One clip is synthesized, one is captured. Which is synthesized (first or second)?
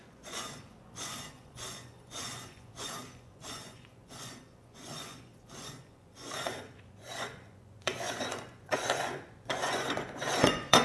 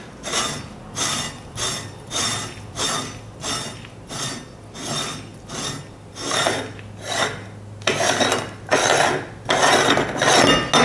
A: first